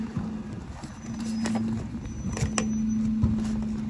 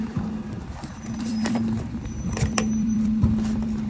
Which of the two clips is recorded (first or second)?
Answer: first